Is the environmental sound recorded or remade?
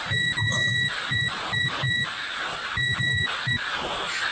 recorded